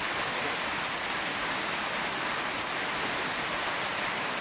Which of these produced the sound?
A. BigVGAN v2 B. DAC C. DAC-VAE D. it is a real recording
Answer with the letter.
D